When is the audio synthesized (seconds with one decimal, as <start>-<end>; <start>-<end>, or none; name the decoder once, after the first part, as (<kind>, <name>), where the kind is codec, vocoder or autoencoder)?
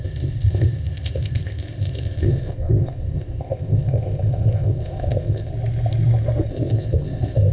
0.0-5.5 (codec, ZipCodec); 6.5-7.5